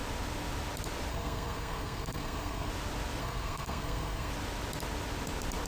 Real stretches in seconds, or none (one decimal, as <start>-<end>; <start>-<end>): 0.0-1.1; 2.7-3.2; 4.3-5.7